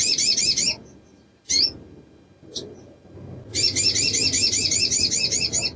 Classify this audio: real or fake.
real